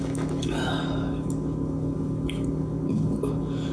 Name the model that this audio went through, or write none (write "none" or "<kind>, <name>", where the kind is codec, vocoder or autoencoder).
codec, DAC